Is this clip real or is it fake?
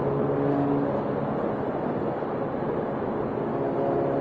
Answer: real